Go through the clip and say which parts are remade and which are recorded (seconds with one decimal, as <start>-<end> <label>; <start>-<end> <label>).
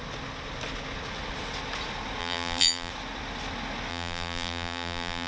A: 0.0-2.2 recorded; 2.2-2.9 remade; 2.9-3.9 recorded; 3.9-5.3 remade